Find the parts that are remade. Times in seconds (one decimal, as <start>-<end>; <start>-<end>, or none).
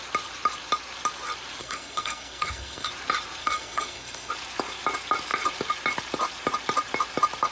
1.6-2.9; 3.4-4.3